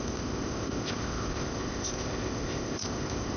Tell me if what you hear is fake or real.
fake